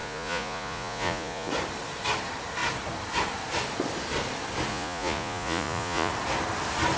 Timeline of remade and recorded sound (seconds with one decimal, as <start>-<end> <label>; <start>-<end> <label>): 0.0-1.5 remade; 1.5-4.7 recorded; 4.7-6.1 remade; 6.1-7.0 recorded